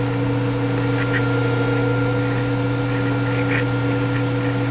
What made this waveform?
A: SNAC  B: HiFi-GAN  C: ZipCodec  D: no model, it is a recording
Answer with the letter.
D